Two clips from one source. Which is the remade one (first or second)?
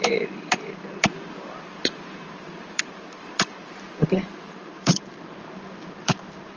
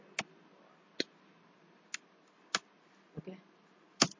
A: first